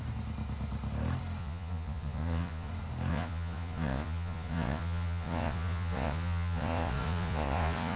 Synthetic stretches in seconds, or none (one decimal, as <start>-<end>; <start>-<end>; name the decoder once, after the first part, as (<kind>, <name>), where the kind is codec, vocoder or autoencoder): 1.4-2.7 (vocoder, Vocos); 3.1-8.0